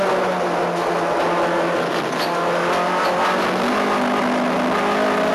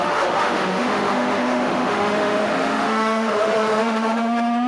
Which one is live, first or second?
first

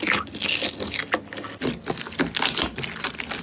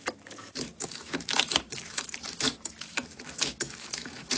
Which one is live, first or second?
first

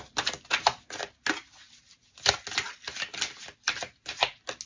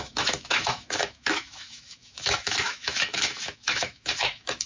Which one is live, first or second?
first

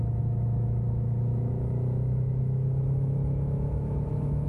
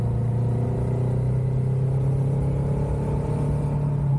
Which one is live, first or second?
second